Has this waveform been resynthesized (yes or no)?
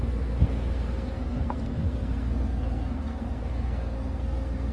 yes